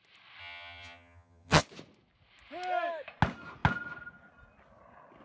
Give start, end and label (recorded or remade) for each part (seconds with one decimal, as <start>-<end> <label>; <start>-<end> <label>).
0.0-0.4 recorded; 0.4-1.6 remade; 1.6-5.2 recorded